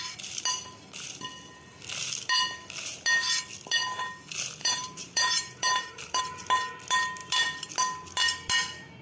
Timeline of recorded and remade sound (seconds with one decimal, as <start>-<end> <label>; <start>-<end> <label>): 0.0-4.6 recorded; 4.6-6.2 remade; 6.2-9.0 recorded